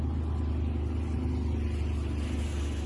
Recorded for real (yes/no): yes